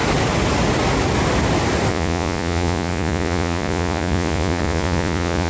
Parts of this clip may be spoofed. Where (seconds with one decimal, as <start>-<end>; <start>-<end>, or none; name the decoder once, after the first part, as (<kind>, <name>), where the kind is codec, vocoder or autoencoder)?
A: 1.9-5.5 (vocoder, Vocos)